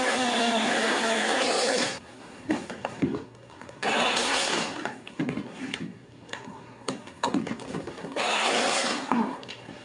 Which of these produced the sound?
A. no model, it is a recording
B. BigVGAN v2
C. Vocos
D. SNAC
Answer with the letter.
D